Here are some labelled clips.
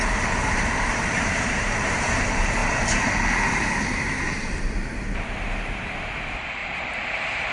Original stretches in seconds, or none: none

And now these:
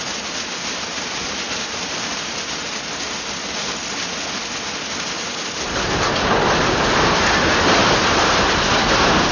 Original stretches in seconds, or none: 0.0-0.6; 3.2-9.3